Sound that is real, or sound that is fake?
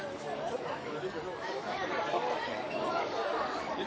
fake